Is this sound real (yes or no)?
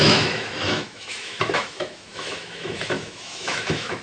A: no